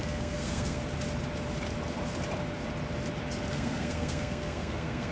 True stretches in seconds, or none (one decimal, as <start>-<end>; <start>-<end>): 0.8-3.5